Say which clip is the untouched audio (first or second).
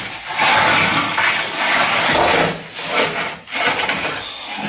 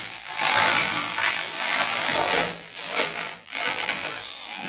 first